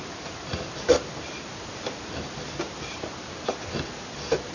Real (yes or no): yes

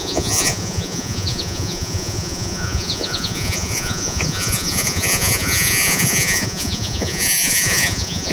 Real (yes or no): no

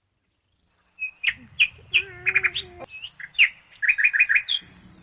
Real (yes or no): yes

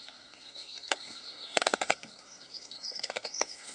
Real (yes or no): no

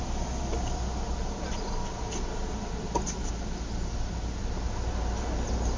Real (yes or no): yes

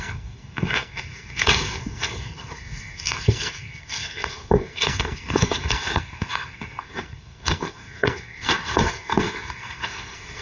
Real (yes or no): no